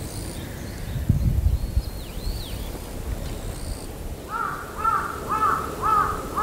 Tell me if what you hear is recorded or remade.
remade